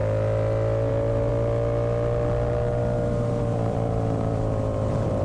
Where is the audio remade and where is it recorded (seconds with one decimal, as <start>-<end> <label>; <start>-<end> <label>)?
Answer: 0.0-0.9 recorded; 0.9-1.3 remade; 1.3-3.4 recorded; 3.4-5.2 remade